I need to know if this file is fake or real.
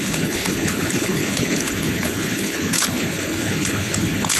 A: fake